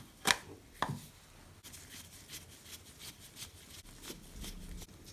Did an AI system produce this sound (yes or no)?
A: no